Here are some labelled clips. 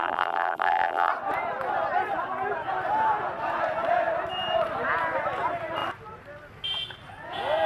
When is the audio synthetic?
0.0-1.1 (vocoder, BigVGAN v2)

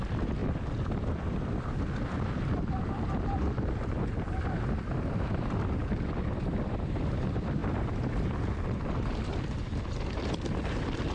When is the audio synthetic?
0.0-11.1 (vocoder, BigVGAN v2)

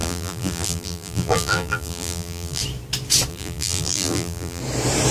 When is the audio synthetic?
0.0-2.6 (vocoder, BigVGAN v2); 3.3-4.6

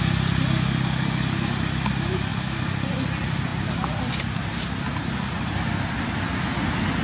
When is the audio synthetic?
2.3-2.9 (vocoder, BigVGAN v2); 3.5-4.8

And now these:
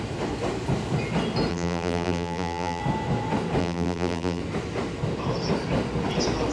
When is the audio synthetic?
1.5-2.8 (vocoder, BigVGAN v2); 3.6-4.4

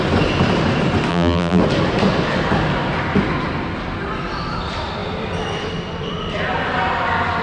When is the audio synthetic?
1.1-1.6 (vocoder, BigVGAN v2)